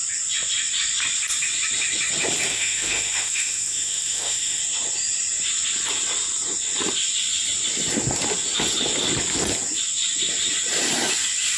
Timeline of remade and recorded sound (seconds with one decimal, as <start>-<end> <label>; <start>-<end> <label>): 0.0-2.5 recorded; 2.5-4.6 remade; 4.6-11.6 recorded